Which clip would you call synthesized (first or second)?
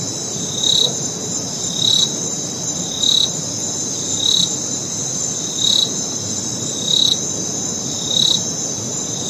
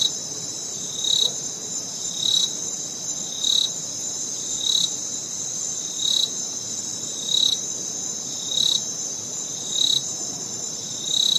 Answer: second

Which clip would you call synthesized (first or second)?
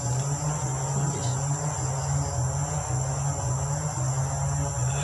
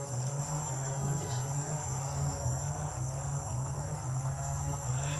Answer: second